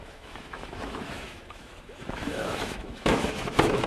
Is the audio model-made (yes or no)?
yes